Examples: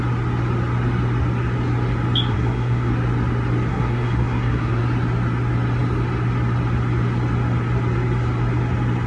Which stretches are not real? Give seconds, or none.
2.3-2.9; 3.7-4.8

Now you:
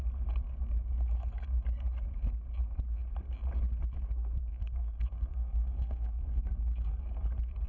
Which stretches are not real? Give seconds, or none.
4.5-7.0

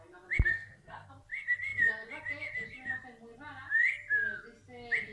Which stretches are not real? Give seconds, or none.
0.5-1.1

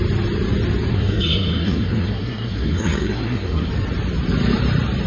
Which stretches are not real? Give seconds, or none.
0.9-3.7

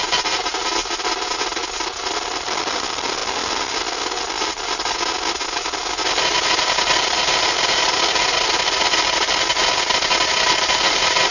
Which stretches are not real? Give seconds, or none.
none

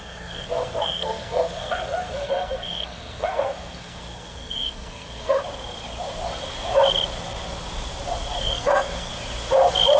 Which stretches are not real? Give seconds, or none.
0.0-5.4; 8.4-9.1

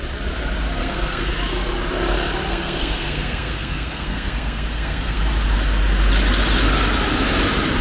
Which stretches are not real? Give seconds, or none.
0.8-1.3; 2.5-5.2

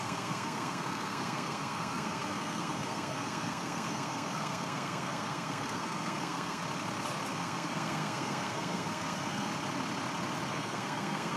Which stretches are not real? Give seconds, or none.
0.0-6.6; 7.3-9.5; 10.5-11.4